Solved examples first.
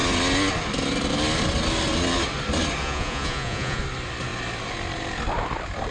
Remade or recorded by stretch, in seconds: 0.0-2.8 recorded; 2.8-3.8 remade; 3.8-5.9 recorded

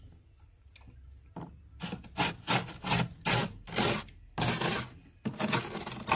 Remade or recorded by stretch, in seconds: 0.0-6.1 recorded

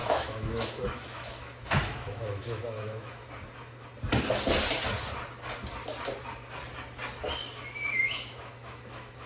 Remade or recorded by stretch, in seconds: 0.0-3.2 remade; 3.2-7.9 recorded; 7.9-9.3 remade

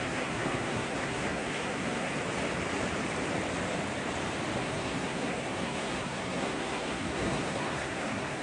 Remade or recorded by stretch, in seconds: 0.0-2.1 remade; 2.1-4.6 recorded; 4.6-8.4 remade

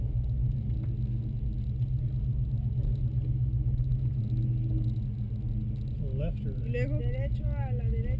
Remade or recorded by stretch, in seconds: 0.0-8.2 recorded

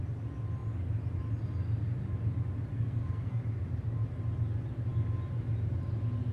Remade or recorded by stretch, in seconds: 0.0-2.7 recorded; 2.7-3.4 remade; 3.4-6.3 recorded